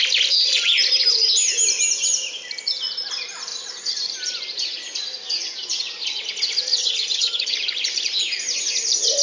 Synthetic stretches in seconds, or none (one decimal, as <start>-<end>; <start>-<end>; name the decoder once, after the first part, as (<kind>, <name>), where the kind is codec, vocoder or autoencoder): 6.8-7.5 (vocoder, HiFi-GAN)

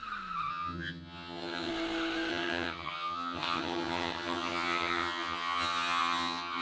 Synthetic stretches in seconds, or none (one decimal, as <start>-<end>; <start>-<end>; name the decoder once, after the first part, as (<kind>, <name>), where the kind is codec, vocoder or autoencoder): 0.5-1.7 (vocoder, HiFi-GAN); 2.3-6.6

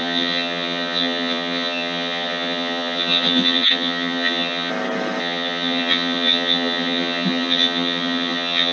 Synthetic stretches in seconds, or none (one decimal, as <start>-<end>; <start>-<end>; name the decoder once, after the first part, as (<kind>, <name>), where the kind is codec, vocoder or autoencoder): 0.0-4.7 (vocoder, HiFi-GAN); 5.2-8.7

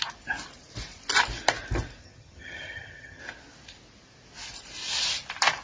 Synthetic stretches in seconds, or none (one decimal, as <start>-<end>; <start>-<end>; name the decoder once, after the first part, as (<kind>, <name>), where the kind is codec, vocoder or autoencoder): 2.0-3.2 (vocoder, HiFi-GAN)

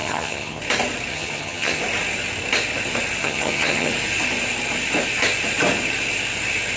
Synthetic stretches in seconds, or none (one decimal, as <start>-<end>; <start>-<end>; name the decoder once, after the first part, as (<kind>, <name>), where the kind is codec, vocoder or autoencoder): 0.0-0.6 (vocoder, HiFi-GAN); 1.1-1.8; 3.2-3.9

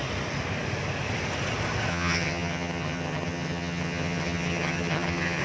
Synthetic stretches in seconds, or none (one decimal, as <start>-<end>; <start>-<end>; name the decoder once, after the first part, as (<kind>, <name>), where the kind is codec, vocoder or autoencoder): 1.9-5.4 (vocoder, HiFi-GAN)